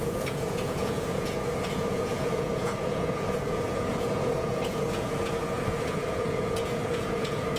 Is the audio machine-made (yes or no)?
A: yes